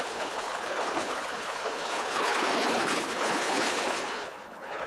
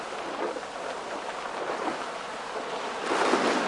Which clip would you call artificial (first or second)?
first